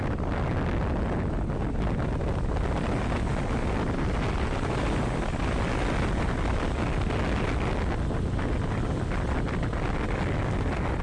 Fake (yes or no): no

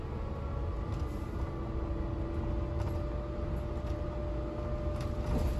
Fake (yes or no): no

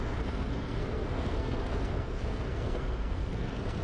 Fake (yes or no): yes